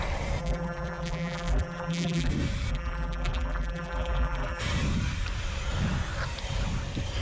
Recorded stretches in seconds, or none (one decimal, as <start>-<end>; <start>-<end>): 0.0-0.4; 2.3-2.7; 4.6-7.2